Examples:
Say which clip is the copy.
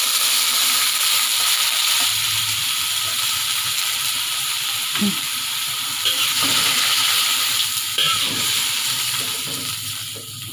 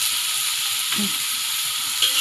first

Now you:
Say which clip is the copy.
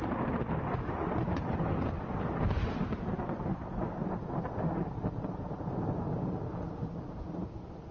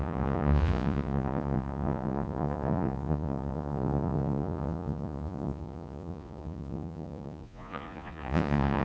second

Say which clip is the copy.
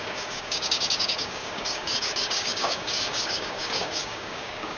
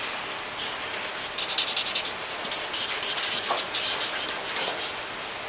first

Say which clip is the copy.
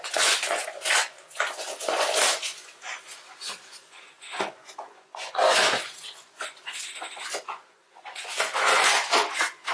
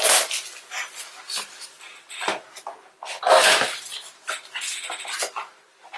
first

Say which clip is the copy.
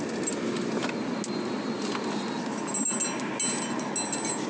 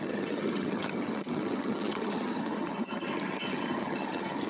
second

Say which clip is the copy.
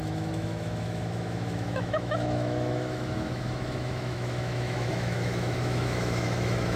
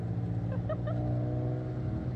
first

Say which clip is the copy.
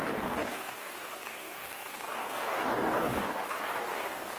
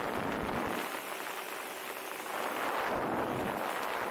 first